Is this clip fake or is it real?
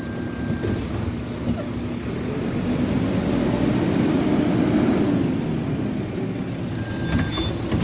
real